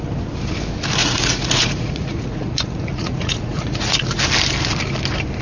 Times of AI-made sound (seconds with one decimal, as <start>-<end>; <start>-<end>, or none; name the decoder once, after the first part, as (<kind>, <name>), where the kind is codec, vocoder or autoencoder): 1.0-4.2 (vocoder, Vocos)